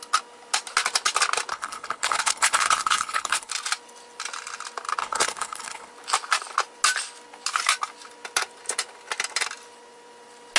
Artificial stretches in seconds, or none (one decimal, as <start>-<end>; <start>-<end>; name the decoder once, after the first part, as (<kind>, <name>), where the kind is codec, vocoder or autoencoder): 1.5-3.5 (codec, HILCodec); 5.0-5.9